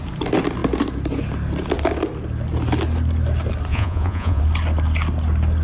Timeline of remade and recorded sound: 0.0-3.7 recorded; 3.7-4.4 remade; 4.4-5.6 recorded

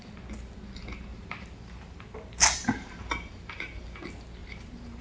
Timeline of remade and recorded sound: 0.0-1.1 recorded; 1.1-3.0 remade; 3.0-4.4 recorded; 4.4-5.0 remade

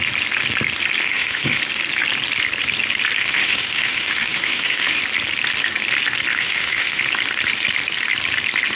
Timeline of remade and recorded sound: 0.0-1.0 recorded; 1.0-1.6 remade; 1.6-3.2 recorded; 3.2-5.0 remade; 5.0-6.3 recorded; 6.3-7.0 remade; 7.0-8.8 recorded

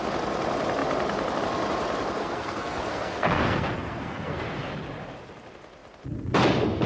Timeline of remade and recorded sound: 0.0-2.2 recorded; 2.2-4.7 remade; 4.7-6.9 recorded

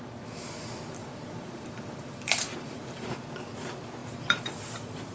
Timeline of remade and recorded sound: 0.0-1.0 recorded; 1.0-3.2 remade; 3.2-4.0 recorded; 4.0-5.1 remade

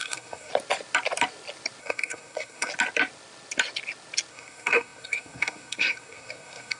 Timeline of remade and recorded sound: 0.0-0.5 remade; 0.5-1.8 recorded; 1.8-2.7 remade; 2.7-4.3 recorded; 4.3-6.8 remade